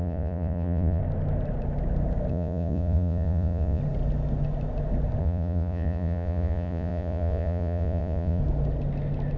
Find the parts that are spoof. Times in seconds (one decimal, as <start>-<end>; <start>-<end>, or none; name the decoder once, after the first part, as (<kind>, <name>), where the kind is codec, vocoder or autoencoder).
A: 0.0-1.0 (vocoder, Vocos); 2.3-3.8; 5.2-8.4